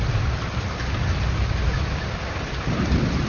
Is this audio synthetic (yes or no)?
no